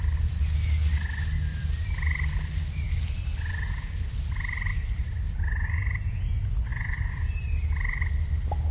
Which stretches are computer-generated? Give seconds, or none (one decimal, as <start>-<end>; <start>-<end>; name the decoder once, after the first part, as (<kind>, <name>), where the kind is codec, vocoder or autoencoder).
1.5-3.1 (vocoder, BigVGAN v2); 4.7-5.2; 6.7-7.5